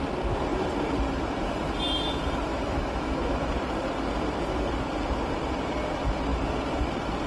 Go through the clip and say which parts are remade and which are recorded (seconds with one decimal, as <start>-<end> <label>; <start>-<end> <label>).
0.0-2.5 recorded; 2.5-3.5 remade; 3.5-7.3 recorded